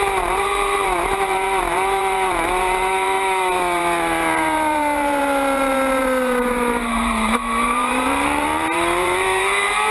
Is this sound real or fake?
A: fake